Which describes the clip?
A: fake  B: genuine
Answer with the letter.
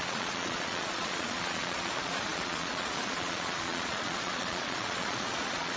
A